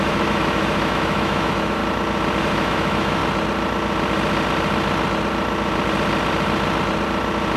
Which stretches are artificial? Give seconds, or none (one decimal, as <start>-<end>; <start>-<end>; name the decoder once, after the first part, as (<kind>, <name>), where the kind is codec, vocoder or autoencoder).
0.0-1.8 (autoencoder, DAC-VAE); 2.4-3.2